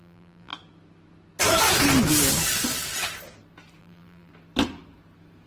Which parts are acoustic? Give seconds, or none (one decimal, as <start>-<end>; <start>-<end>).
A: 0.5-3.8; 4.3-5.5